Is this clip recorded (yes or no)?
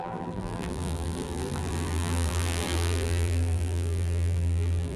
no